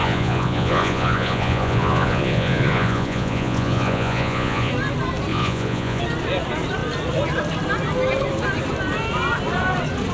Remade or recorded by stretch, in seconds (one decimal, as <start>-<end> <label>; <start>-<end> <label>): 0.0-4.7 remade; 4.7-5.3 recorded; 5.3-6.0 remade; 6.0-10.1 recorded